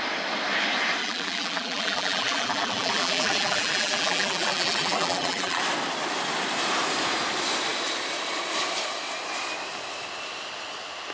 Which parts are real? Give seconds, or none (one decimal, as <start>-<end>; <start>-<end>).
0.0-1.0; 5.6-11.1